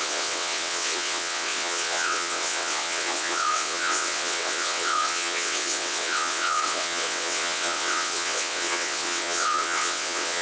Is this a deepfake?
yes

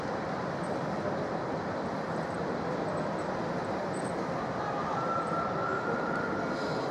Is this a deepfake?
no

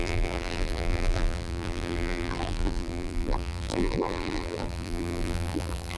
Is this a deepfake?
yes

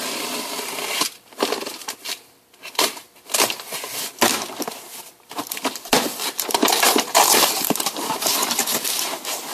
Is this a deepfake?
no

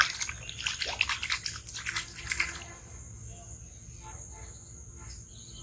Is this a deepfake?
no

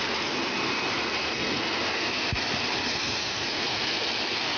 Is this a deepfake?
yes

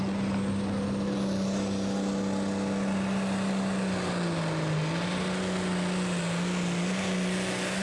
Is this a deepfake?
no